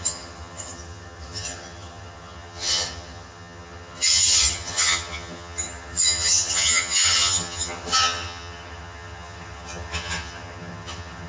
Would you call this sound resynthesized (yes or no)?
yes